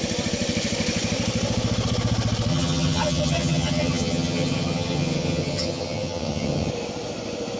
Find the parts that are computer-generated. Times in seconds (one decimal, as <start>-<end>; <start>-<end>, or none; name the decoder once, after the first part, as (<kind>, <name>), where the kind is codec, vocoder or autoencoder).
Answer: 2.5-6.7 (vocoder, HiFi-GAN)